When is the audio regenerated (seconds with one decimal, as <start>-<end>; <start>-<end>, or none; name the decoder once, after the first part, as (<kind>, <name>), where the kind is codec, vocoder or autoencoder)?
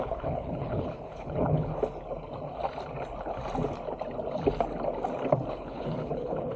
0.0-1.7 (codec, HILCodec); 5.5-6.6